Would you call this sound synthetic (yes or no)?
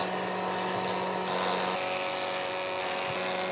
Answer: no